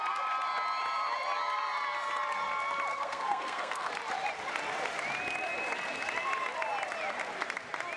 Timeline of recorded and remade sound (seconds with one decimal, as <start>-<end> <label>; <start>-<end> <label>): 0.0-2.9 recorded; 2.9-3.9 remade; 3.9-8.0 recorded